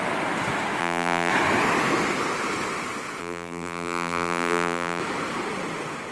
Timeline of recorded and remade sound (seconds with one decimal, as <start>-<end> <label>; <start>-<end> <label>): 0.0-0.8 recorded; 0.8-1.3 remade; 1.3-3.2 recorded; 3.2-5.0 remade; 5.0-6.1 recorded